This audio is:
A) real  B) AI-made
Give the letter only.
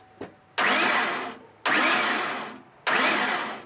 A